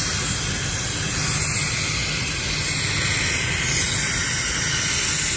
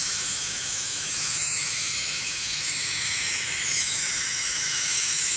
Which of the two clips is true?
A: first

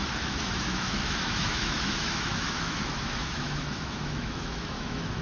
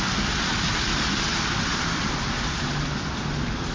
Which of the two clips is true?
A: second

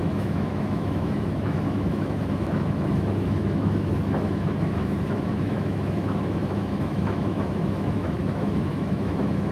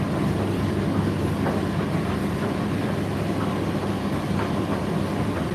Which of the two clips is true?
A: second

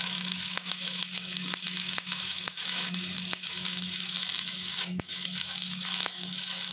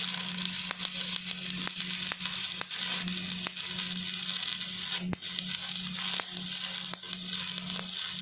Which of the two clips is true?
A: second